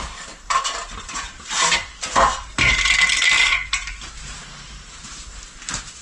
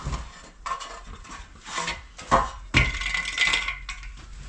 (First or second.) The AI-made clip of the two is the first